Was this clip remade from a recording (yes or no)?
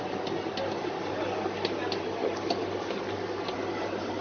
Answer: no